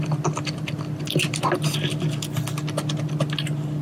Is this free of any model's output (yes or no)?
yes